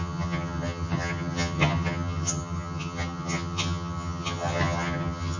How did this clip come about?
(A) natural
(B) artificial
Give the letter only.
B